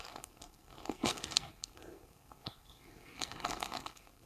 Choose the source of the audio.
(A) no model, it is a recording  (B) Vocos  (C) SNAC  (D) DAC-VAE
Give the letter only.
C